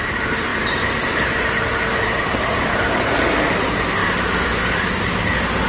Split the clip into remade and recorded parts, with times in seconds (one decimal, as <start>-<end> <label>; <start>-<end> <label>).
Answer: 0.0-0.5 recorded; 0.5-3.2 remade; 3.2-5.7 recorded